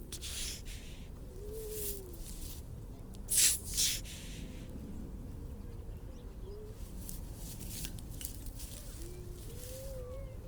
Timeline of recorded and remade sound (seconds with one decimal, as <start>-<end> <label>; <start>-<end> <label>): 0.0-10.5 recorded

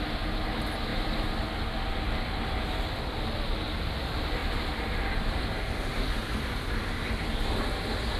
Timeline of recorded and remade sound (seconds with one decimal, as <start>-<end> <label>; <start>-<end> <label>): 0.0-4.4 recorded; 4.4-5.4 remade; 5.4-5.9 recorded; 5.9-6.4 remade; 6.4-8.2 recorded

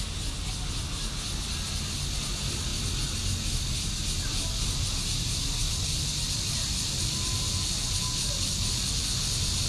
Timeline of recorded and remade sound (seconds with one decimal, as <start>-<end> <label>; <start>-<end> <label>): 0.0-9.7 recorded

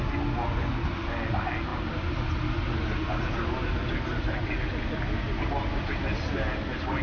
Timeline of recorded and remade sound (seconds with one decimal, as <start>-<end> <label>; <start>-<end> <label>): 0.0-7.0 recorded

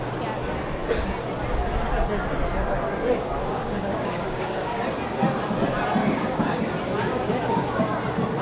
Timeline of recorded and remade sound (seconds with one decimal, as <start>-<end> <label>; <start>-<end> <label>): 0.0-3.5 recorded; 3.5-4.8 remade; 4.8-6.0 recorded; 6.0-6.6 remade; 6.6-7.1 recorded; 7.1-7.8 remade; 7.8-8.4 recorded

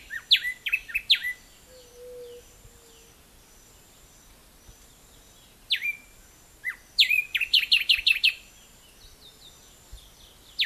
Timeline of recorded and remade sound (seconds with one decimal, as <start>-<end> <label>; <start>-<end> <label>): 0.0-10.7 recorded

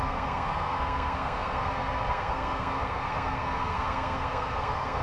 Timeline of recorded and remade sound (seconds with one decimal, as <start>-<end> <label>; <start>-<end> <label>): 0.0-5.0 remade

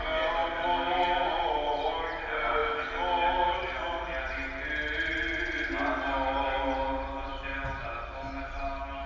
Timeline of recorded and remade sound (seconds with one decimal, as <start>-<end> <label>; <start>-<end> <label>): 0.0-9.1 recorded